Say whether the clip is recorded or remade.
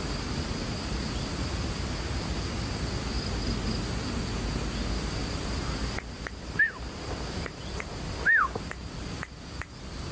recorded